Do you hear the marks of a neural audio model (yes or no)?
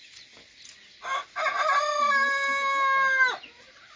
no